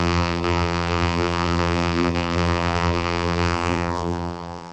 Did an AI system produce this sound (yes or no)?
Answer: yes